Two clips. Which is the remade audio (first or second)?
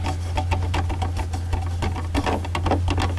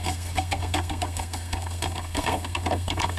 second